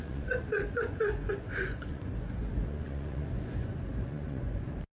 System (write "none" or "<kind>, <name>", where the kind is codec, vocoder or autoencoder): vocoder, Vocos